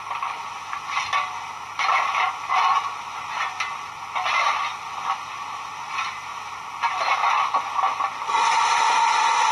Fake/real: real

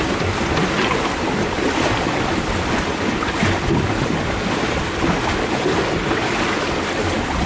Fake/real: real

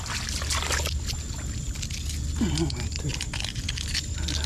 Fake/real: real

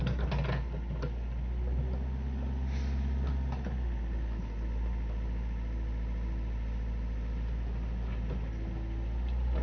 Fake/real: real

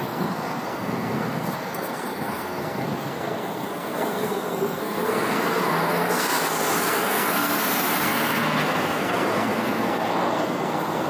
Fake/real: fake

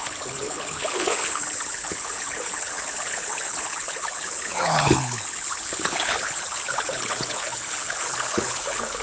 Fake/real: fake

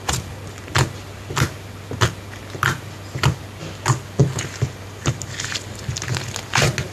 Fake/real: real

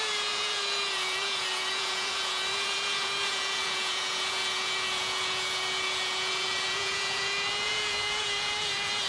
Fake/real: fake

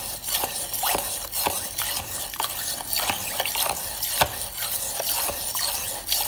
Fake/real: real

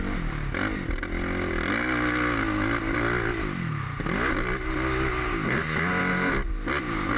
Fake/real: real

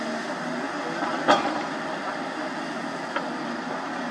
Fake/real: real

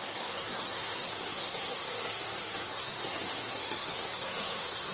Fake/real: fake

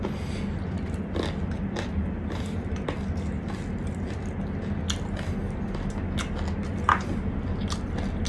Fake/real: real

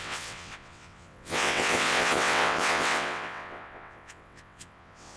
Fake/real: fake